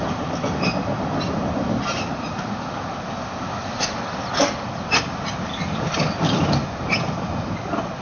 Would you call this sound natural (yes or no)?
yes